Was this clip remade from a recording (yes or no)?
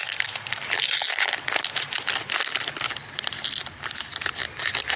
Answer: no